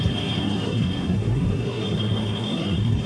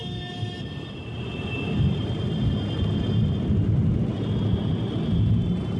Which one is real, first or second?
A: second